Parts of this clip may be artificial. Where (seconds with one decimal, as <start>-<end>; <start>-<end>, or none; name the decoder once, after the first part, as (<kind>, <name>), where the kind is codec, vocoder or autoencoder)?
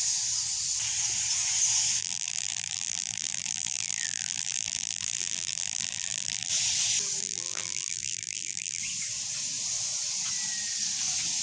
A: 2.0-6.5 (vocoder, BigVGAN v2); 7.2-8.8